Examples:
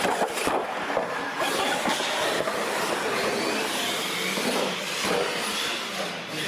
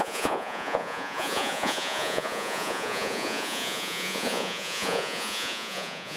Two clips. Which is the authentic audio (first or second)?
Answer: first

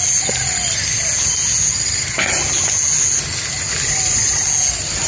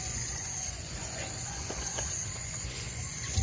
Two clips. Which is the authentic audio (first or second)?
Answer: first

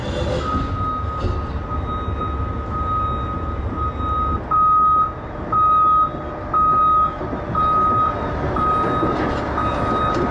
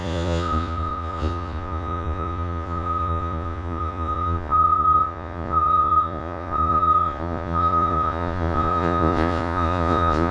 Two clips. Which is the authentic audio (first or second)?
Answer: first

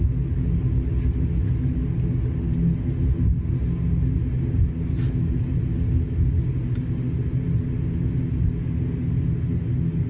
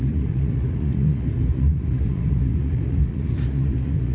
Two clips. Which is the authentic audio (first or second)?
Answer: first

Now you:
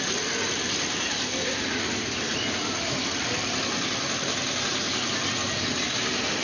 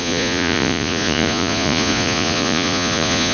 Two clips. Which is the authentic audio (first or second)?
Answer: first